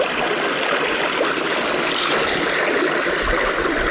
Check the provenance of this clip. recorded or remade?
recorded